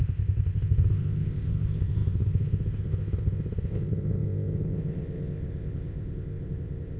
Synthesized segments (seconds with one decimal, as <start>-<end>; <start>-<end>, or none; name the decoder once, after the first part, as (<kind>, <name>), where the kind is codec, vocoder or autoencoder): 0.0-7.0 (codec, ZipCodec)